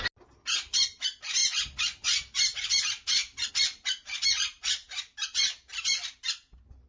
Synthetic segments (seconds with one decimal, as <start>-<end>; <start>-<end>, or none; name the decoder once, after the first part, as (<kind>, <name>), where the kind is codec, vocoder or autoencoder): none